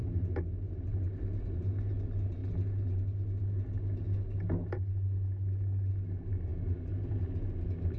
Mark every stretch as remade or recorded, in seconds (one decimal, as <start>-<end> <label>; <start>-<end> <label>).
0.0-8.0 recorded